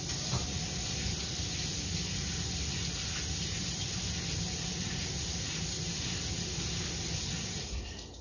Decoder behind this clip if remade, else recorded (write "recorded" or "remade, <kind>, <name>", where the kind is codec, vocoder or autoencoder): recorded